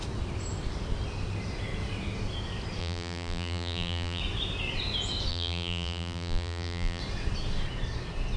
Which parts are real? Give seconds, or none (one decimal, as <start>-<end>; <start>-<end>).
0.0-2.8; 4.2-5.3; 7.0-8.4